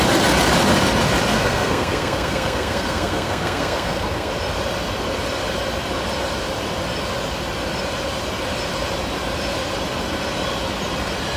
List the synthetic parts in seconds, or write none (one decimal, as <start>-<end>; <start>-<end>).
1.3-4.3